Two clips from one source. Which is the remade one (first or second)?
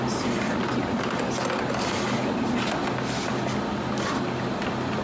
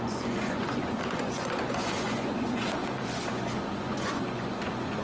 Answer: second